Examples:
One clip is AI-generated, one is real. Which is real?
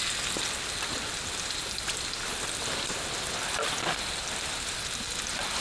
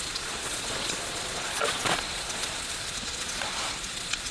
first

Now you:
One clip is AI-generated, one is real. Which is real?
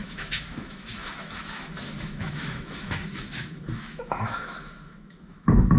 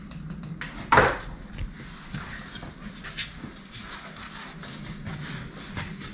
second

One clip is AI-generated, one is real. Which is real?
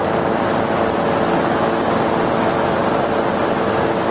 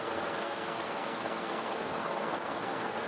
first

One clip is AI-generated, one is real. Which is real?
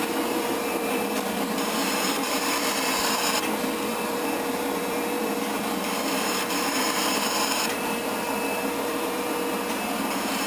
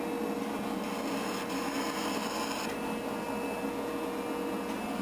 second